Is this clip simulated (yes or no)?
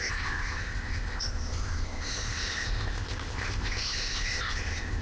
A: yes